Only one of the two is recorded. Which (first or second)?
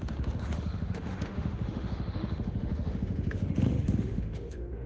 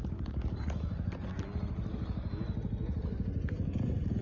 second